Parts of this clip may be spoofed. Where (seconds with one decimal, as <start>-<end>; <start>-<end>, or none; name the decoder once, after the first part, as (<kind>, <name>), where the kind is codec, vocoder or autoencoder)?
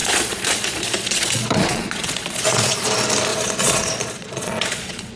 0.0-2.9 (vocoder, Vocos); 3.3-5.2